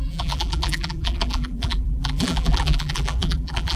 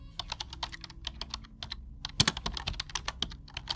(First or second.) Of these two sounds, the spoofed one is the first